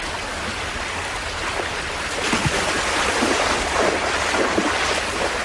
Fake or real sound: real